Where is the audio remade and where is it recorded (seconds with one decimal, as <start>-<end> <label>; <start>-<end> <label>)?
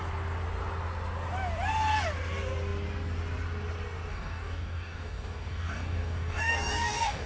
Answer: 0.0-4.1 recorded; 4.1-7.3 remade